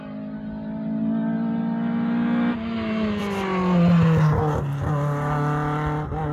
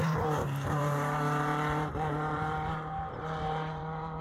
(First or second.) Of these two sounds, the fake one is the second